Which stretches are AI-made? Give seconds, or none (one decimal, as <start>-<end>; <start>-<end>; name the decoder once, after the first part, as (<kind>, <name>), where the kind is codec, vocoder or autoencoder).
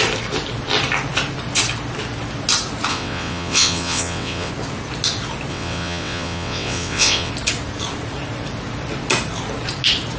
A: 2.9-4.5 (vocoder, WaveNeXt); 5.5-7.3